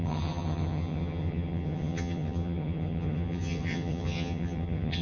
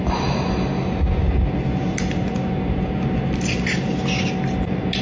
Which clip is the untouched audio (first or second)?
second